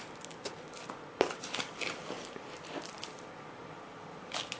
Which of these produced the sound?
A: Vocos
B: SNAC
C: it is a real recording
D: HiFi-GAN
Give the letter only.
C